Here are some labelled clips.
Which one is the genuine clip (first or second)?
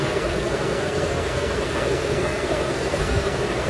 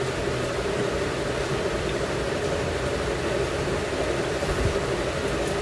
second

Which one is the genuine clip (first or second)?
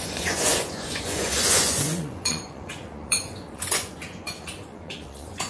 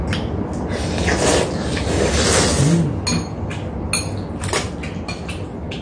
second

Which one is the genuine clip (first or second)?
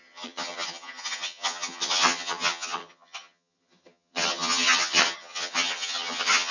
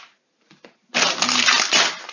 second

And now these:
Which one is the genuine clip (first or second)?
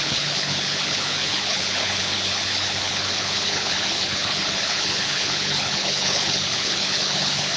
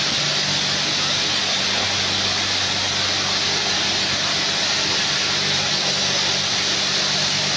second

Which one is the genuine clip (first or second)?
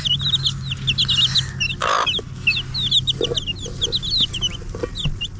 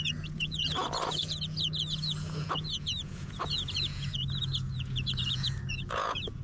first